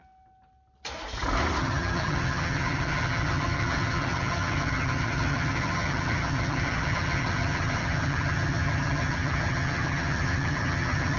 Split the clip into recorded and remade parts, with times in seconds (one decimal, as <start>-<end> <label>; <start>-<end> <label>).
0.0-1.6 recorded; 1.6-11.2 remade